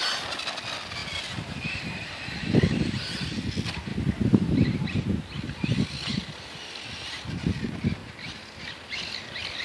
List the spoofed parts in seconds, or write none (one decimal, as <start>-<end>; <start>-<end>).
3.9-5.1